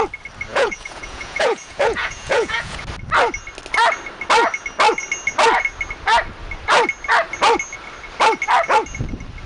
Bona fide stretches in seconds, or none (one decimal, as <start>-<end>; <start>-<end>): 0.0-0.5; 2.8-9.5